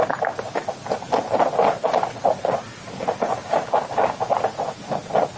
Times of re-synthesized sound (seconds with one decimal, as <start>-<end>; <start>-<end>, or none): 3.4-4.2

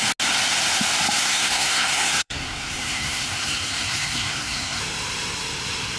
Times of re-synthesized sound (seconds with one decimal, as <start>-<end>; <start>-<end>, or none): 1.2-4.8

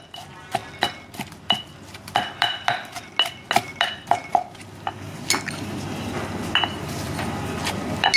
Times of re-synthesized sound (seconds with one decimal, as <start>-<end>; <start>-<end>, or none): none

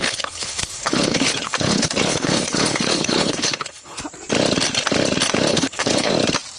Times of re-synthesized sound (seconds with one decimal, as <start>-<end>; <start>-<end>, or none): 0.0-4.0; 5.5-6.1

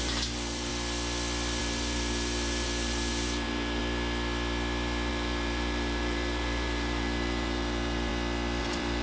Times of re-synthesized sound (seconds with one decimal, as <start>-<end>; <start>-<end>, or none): 0.0-0.7; 1.6-3.8; 5.1-8.1; 8.6-9.0